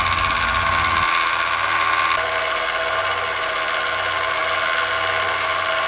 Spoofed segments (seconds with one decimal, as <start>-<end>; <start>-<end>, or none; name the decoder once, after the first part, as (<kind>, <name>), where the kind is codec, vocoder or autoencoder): none